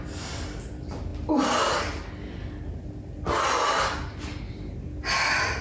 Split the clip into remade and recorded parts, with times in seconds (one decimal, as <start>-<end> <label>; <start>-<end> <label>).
0.0-5.6 recorded